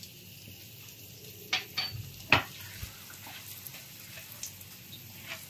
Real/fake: real